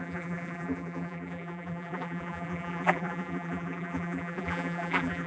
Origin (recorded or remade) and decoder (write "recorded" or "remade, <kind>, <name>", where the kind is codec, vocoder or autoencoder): remade, vocoder, BigVGAN v2